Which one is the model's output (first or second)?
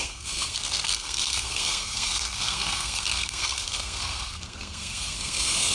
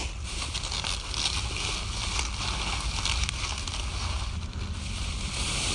first